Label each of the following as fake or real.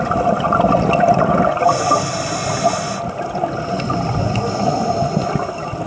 real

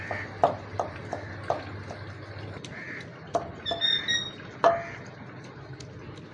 real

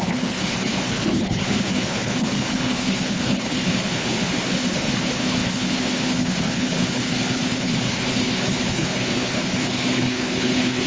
fake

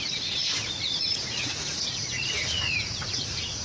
fake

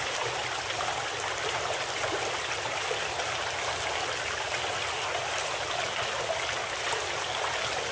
real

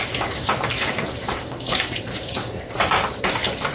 fake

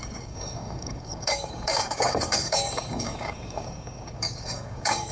fake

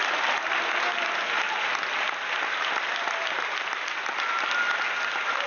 real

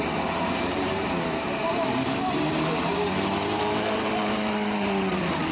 fake